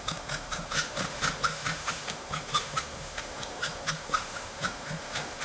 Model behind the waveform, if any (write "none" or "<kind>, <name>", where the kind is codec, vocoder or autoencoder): autoencoder, DAC-VAE